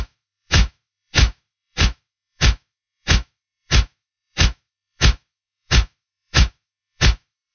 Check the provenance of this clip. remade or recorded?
remade